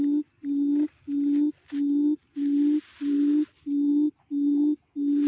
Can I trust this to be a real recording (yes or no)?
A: yes